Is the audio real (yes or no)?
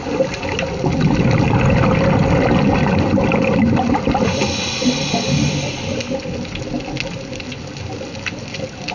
yes